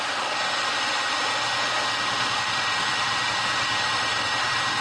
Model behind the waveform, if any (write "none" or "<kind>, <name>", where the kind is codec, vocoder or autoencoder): vocoder, BigVGAN v2